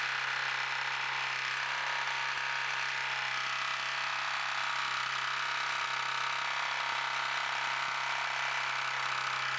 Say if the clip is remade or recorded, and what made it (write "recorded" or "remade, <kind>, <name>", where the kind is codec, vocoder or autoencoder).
recorded